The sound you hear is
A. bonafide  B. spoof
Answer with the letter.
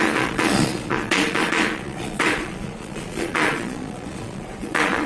B